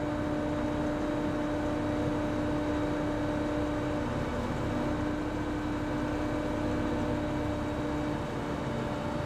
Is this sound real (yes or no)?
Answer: yes